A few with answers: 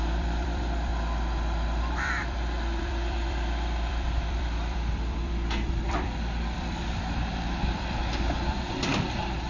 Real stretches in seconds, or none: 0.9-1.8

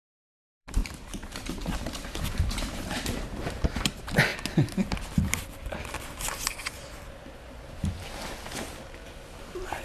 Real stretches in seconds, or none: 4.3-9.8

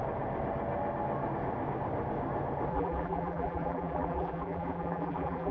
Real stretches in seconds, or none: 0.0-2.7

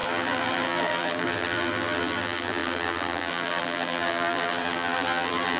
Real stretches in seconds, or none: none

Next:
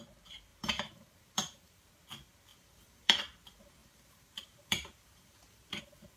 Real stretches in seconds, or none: 0.0-0.5; 1.9-2.5; 3.2-3.8; 5.8-6.2